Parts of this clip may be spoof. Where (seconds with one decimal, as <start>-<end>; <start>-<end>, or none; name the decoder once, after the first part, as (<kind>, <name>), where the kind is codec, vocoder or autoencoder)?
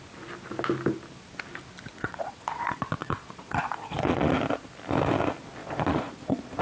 1.9-4.3 (vocoder, Vocos); 5.6-6.6